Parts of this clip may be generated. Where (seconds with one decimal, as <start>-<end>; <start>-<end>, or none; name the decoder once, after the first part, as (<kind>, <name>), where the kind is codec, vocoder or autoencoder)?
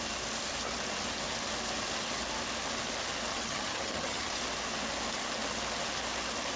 3.3-4.3 (vocoder, HiFi-GAN)